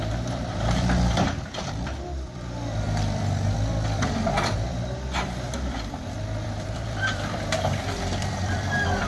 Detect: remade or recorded remade